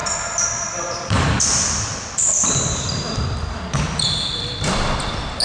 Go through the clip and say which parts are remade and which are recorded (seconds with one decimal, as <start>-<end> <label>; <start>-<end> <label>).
0.0-5.4 remade